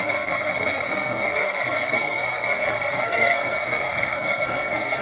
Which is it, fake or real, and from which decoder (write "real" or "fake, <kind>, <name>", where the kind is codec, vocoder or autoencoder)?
fake, codec, SNAC